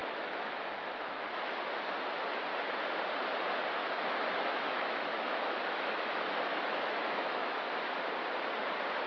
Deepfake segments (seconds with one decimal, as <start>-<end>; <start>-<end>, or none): 0.0-1.5; 3.8-7.6